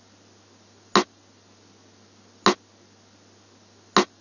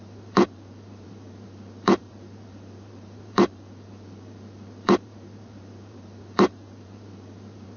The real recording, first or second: first